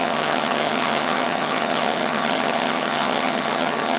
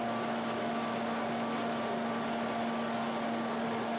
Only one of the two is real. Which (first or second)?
second